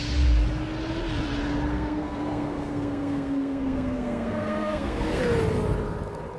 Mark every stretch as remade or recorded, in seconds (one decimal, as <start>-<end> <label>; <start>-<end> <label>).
0.0-1.7 recorded; 1.7-5.2 remade; 5.2-6.4 recorded